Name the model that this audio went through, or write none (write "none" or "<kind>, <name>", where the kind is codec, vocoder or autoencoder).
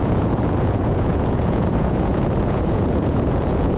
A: vocoder, Vocos